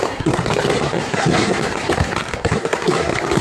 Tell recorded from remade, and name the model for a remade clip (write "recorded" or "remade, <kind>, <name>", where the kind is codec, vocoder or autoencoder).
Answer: remade, codec, SNAC